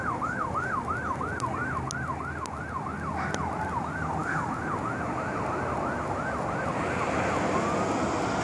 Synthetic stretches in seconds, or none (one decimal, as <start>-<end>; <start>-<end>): none